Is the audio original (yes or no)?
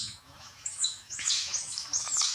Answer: no